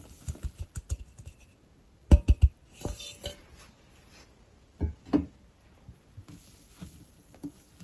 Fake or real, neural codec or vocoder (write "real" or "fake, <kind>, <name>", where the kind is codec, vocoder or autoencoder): real